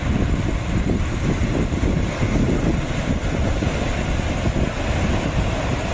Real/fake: real